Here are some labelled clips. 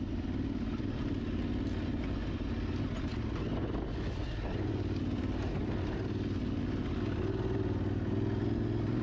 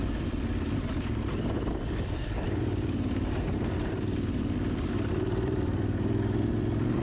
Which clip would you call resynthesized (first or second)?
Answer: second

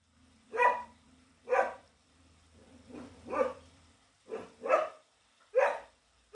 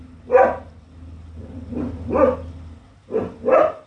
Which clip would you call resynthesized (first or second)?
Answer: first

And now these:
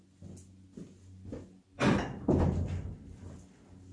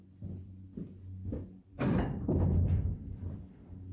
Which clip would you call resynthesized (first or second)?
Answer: second